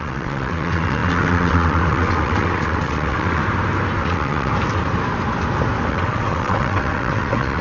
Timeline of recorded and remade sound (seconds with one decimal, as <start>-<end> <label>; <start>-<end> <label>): 0.0-3.4 remade; 3.4-4.0 recorded; 4.0-4.5 remade; 4.5-5.9 recorded; 5.9-7.6 remade